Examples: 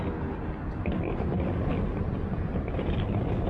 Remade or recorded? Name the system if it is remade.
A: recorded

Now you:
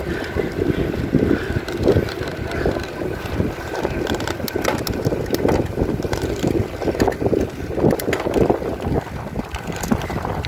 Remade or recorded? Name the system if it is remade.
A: recorded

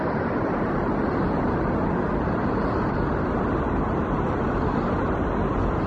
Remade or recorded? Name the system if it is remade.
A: recorded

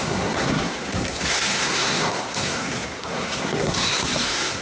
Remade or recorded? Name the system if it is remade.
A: remade, codec, SNAC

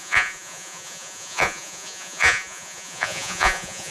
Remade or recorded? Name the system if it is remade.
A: remade, vocoder, Vocos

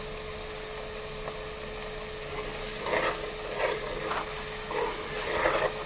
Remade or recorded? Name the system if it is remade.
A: recorded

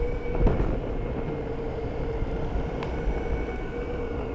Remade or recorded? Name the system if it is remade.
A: recorded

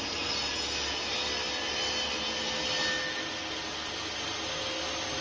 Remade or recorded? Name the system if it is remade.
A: recorded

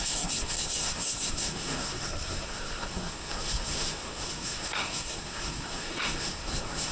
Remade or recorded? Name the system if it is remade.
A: remade, codec, SNAC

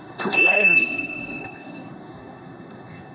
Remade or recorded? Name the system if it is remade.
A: remade, codec, SNAC